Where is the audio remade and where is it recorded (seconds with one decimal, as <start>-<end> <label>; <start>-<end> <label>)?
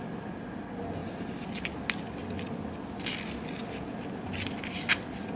0.0-5.4 recorded